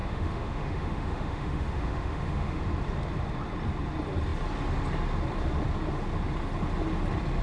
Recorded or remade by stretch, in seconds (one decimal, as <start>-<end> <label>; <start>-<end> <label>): 0.0-2.6 remade; 2.6-7.4 recorded